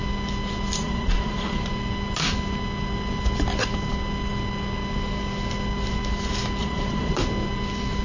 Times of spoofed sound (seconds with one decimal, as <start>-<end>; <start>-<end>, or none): 0.8-1.7; 6.6-7.1

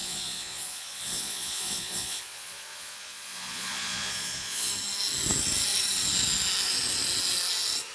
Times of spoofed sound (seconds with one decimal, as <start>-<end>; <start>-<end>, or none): 0.0-4.7